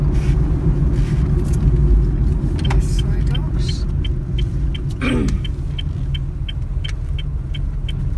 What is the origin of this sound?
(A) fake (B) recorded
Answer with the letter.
B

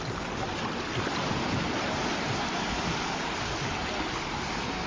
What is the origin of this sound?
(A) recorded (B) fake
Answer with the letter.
A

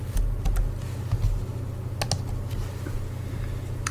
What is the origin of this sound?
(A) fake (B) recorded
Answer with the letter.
B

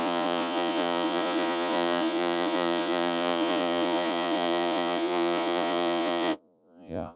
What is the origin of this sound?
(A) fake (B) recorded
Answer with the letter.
A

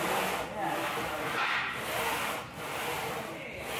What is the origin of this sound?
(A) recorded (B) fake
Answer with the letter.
A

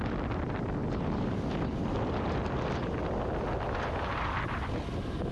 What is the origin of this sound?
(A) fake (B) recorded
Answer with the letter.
B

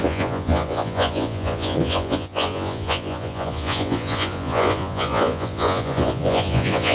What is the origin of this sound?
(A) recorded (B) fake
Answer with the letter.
B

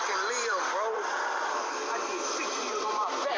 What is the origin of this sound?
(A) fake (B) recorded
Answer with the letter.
A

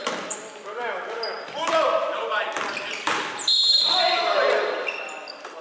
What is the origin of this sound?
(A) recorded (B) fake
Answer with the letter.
B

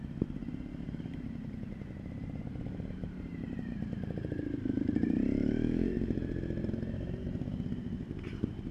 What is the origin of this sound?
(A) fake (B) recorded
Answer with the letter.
A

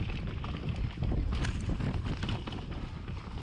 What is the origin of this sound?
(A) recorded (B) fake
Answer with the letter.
A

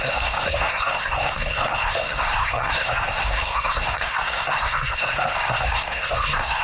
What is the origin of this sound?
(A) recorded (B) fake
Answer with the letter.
B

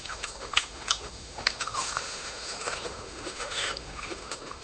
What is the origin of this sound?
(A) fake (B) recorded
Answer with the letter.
A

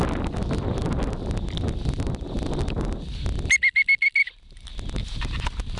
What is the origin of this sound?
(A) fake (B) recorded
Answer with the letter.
B